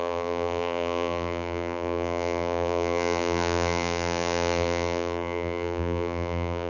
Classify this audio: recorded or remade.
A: remade